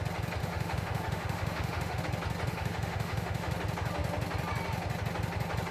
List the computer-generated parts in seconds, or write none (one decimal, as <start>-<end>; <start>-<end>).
0.4-2.0; 2.5-3.5